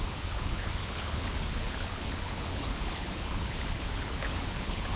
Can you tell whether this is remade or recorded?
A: remade